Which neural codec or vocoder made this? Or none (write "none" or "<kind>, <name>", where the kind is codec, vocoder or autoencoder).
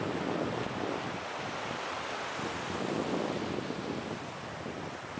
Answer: none